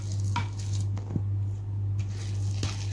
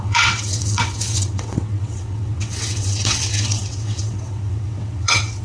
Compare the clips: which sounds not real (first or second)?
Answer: second